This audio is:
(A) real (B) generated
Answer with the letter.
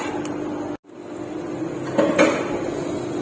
A